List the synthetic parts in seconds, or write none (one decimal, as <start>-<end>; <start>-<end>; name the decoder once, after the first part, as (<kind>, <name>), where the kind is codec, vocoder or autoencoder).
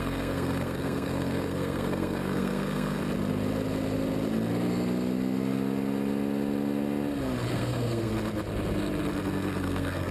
0.0-3.0 (codec, SNAC); 7.5-8.1; 9.3-10.1